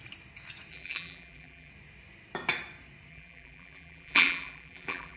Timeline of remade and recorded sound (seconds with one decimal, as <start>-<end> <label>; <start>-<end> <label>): 0.0-0.7 recorded; 0.7-1.7 remade; 1.7-3.1 recorded; 3.1-5.2 remade

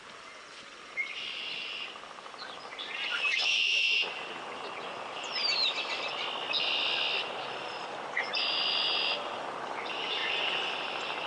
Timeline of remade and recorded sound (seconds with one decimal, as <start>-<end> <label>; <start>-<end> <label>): 0.0-5.4 remade; 5.4-7.3 recorded; 7.3-10.2 remade; 10.2-10.7 recorded; 10.7-11.3 remade

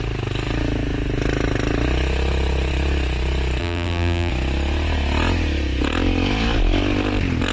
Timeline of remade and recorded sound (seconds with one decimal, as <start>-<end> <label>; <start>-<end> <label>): 0.0-3.6 recorded; 3.6-4.3 remade; 4.3-7.5 recorded

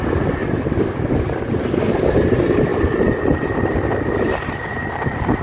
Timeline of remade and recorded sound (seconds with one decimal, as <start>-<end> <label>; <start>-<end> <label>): 0.0-0.4 remade; 0.4-0.9 recorded; 0.9-5.4 remade

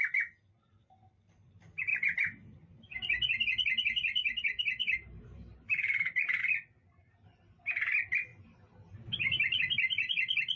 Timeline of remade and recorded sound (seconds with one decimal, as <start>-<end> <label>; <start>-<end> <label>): 0.0-1.9 recorded; 1.9-2.8 remade; 2.8-4.2 recorded; 4.2-6.4 remade; 6.4-10.6 recorded

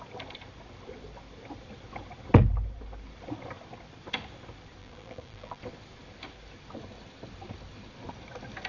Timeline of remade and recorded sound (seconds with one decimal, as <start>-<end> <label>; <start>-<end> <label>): 0.0-4.8 recorded; 4.8-5.6 remade; 5.6-8.7 recorded

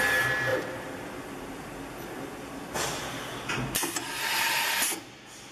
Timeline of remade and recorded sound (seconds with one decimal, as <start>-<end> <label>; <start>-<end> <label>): 0.0-0.5 recorded; 0.5-3.0 remade; 3.0-5.5 recorded